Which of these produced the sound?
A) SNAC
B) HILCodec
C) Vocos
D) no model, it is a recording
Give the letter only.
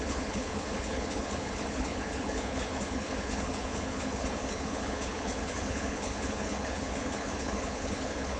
B